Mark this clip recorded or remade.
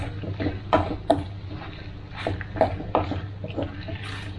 recorded